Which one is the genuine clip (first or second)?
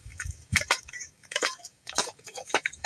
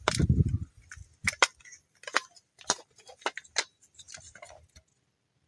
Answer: second